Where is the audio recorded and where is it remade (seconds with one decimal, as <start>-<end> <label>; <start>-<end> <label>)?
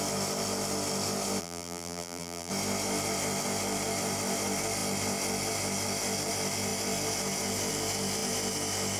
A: 0.0-1.4 recorded; 1.4-2.5 remade; 2.5-9.0 recorded